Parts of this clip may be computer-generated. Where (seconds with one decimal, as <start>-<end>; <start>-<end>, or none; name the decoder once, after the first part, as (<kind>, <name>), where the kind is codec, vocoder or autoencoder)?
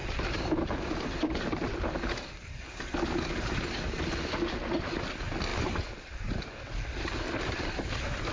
none